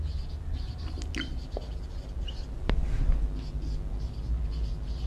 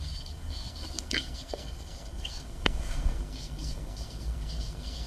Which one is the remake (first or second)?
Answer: second